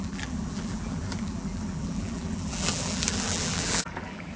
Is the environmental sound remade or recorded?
remade